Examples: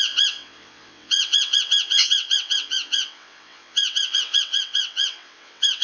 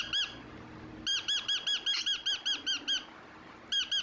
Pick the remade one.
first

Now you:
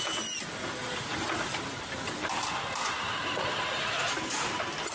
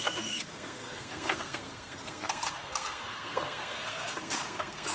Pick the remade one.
second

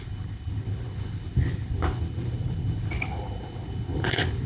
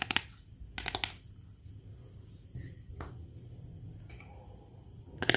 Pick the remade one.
first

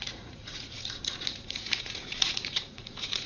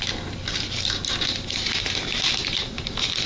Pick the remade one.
first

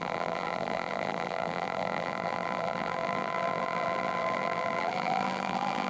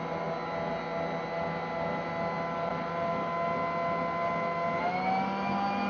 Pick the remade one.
first